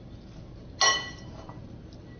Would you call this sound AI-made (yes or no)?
no